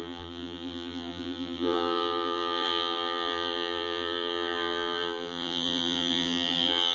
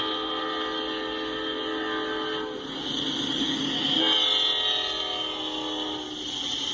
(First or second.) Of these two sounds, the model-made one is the first